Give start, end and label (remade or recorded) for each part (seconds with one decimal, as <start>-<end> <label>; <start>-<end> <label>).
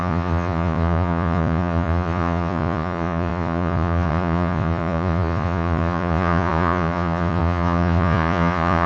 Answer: 0.0-8.9 remade